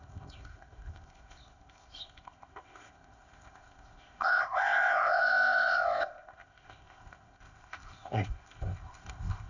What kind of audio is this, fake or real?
fake